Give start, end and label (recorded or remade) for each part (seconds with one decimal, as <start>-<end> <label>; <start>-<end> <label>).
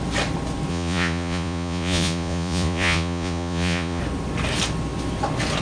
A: 0.0-0.7 recorded; 0.7-4.0 remade; 4.0-5.6 recorded